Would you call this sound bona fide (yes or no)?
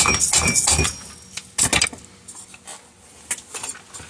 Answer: yes